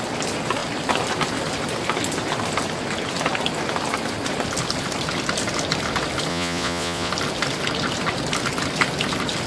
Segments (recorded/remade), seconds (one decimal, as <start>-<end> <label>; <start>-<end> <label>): 0.0-6.3 recorded; 6.3-7.1 remade; 7.1-9.5 recorded